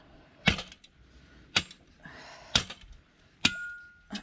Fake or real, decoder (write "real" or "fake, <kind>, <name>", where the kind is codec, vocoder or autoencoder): real